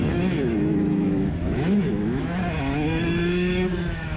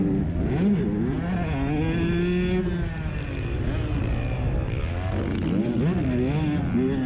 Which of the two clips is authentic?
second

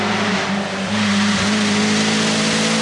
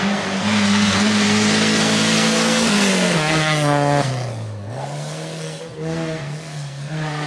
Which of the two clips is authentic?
first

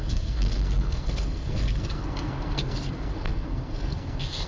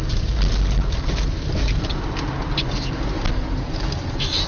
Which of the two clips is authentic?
second